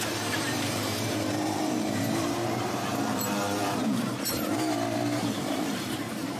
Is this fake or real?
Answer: fake